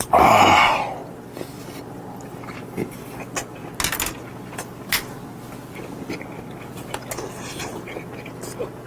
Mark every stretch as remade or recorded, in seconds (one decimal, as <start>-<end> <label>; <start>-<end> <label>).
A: 0.0-8.9 recorded